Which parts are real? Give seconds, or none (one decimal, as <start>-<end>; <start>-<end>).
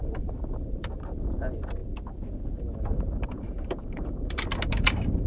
1.8-2.5